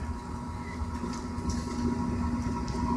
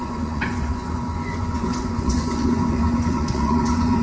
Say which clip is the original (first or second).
first